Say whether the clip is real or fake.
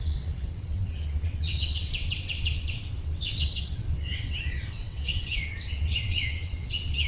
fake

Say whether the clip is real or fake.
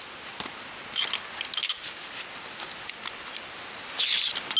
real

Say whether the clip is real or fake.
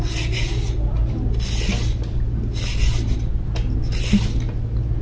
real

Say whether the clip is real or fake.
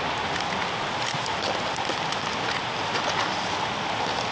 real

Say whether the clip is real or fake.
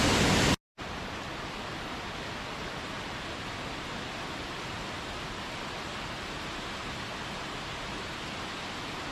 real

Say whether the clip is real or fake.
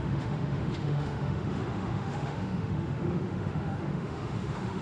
fake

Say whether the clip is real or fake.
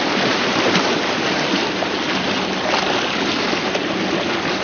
real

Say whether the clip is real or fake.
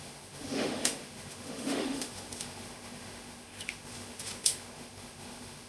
fake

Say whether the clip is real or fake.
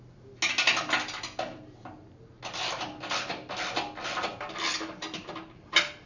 real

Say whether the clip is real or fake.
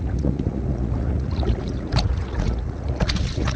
fake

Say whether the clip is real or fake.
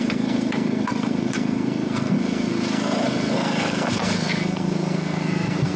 fake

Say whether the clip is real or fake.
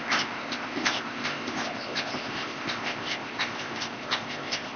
fake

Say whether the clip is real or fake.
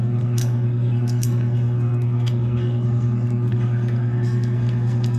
fake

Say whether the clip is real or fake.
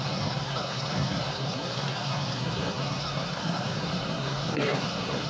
fake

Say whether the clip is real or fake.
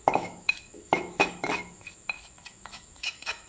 fake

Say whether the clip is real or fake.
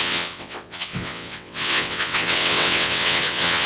fake